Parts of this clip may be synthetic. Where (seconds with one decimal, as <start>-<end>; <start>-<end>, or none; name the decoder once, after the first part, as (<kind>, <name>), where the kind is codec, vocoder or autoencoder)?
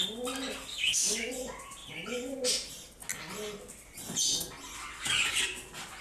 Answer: 0.7-1.3 (autoencoder, DAC-VAE)